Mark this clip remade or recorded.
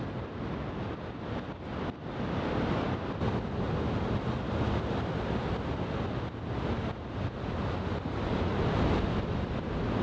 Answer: recorded